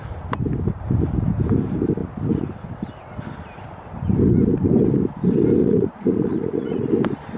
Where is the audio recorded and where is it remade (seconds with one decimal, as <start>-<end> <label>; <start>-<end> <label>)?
0.0-5.6 recorded; 5.6-6.9 remade; 6.9-7.4 recorded